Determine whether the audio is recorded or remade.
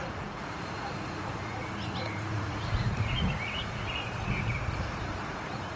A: remade